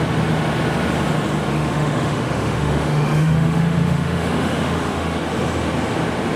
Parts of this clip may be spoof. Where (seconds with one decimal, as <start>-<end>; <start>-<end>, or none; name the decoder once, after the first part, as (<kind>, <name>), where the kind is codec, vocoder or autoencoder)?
1.5-5.2 (autoencoder, DAC-VAE)